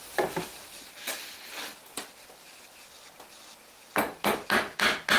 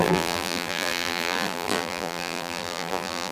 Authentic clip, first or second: first